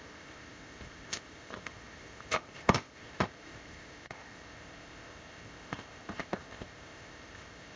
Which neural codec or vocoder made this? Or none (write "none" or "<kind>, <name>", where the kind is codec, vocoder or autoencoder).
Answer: codec, ZipCodec